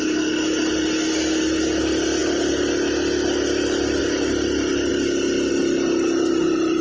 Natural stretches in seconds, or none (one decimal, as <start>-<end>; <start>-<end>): 0.0-6.8